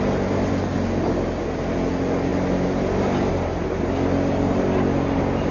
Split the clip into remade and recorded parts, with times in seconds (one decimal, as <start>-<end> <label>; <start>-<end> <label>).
0.0-5.5 recorded

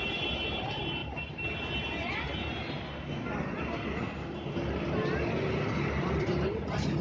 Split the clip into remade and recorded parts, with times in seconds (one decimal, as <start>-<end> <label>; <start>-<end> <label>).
0.0-7.0 recorded

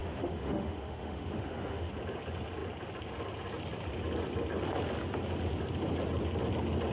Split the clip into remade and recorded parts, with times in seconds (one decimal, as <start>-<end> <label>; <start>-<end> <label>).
0.0-1.9 remade; 1.9-6.9 recorded